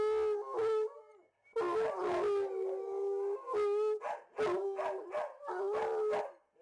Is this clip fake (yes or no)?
no